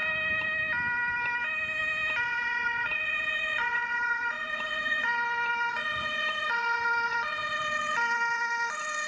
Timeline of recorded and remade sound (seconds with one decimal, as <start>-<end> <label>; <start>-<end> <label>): 0.0-2.2 recorded; 2.2-5.1 remade; 5.1-5.7 recorded; 5.7-9.1 remade